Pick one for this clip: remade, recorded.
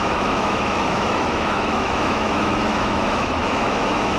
remade